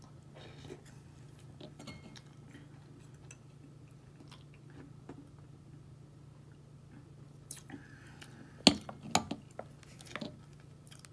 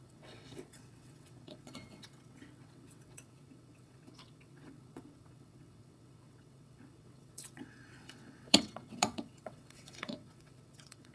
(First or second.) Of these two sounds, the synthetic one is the second